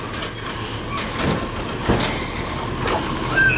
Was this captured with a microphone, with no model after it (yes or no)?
yes